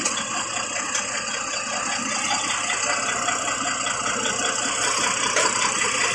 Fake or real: real